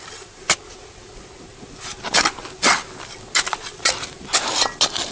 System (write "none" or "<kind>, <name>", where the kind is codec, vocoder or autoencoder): none